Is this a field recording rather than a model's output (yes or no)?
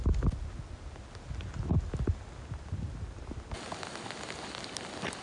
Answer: yes